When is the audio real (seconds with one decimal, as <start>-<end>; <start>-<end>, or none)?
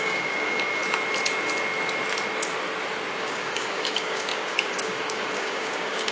0.8-3.2